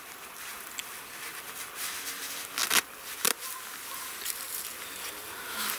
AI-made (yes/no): no